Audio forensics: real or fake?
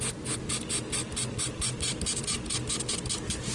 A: real